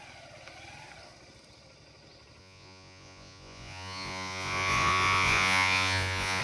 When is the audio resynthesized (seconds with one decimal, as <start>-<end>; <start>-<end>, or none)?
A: 2.4-6.4

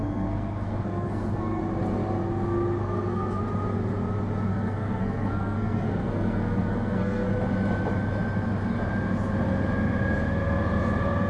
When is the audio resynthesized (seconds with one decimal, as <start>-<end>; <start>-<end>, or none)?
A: 0.0-1.6; 2.8-3.4; 4.5-7.3

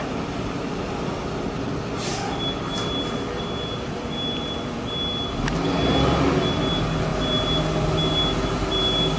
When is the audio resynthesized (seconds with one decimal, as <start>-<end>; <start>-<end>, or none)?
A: none